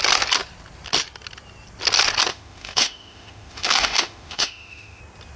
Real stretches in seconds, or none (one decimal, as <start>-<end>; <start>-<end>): 0.0-2.3; 5.0-5.4